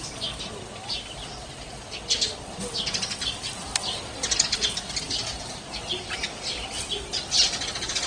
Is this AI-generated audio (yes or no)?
no